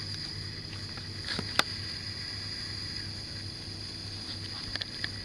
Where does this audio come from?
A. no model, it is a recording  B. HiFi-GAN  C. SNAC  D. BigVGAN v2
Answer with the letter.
A